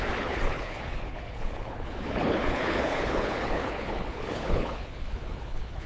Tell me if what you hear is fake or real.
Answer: fake